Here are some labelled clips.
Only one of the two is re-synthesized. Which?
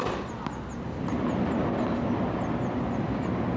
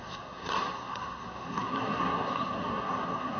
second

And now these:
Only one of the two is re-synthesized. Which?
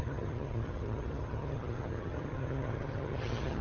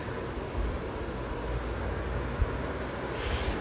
first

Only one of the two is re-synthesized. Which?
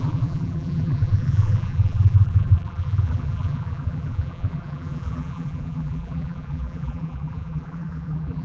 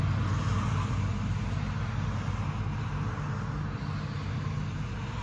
first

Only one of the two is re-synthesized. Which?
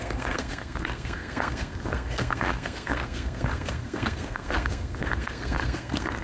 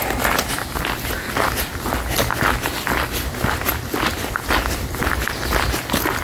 first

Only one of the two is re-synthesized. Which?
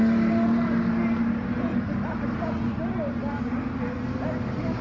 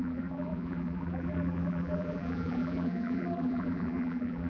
second